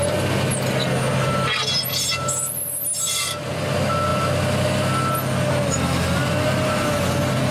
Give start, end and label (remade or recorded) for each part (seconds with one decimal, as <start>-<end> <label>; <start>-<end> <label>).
0.0-7.5 recorded